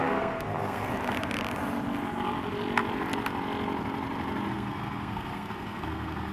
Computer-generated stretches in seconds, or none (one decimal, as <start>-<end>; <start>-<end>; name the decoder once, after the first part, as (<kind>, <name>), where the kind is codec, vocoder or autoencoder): 0.0-0.9 (codec, SNAC); 4.5-6.3